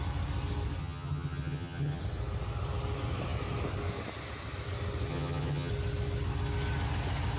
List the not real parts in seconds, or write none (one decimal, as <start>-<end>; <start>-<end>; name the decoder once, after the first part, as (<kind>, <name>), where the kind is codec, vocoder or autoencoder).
0.8-2.0 (vocoder, HiFi-GAN); 5.1-5.7